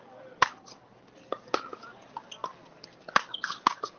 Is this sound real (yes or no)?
yes